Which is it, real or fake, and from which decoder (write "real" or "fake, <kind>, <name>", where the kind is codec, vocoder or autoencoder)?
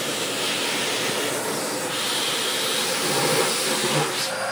fake, vocoder, BigVGAN v2